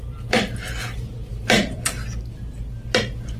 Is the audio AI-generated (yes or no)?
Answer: yes